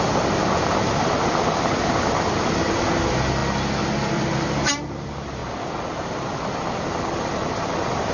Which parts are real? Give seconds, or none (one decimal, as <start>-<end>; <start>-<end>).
0.0-8.1